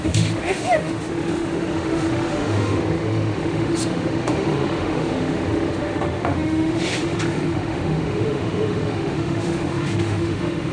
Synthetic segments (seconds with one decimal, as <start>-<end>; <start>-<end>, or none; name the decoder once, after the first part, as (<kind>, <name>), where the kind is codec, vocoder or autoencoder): 0.0-10.7 (autoencoder, DAC-VAE)